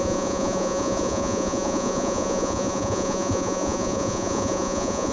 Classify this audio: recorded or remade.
remade